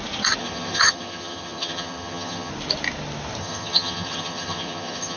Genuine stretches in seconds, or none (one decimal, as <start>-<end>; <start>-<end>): 0.0-0.4; 2.5-3.4